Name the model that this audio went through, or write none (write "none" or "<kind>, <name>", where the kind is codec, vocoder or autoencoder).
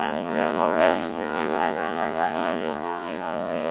vocoder, Vocos